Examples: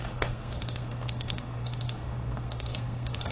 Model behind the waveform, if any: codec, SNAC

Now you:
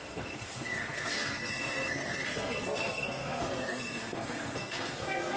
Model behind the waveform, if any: codec, SNAC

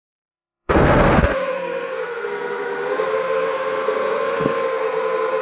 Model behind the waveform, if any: codec, SNAC